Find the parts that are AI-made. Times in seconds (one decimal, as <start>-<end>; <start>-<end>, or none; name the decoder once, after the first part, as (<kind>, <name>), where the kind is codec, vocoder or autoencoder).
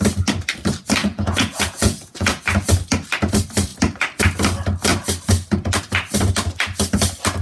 1.0-2.4 (vocoder, Vocos)